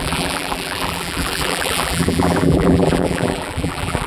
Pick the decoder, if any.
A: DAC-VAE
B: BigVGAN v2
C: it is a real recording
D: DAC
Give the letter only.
B